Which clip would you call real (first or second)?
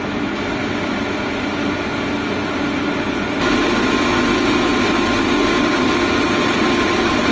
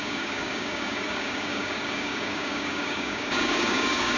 first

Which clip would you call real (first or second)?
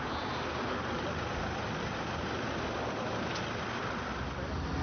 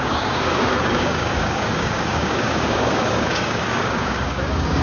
first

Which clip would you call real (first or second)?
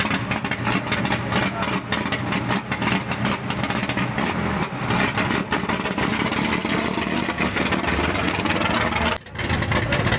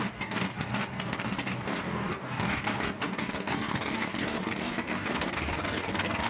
first